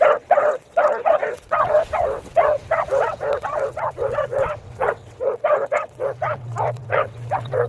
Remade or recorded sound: remade